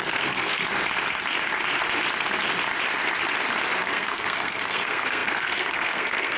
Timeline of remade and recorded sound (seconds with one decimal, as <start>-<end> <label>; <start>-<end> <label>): 0.0-0.6 remade; 0.6-3.8 recorded; 3.8-6.4 remade